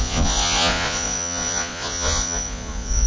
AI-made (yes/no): yes